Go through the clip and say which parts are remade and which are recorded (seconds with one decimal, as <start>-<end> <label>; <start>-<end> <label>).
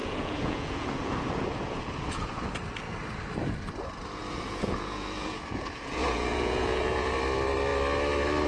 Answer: 0.0-2.5 remade; 2.5-4.2 recorded; 4.2-7.1 remade; 7.1-8.5 recorded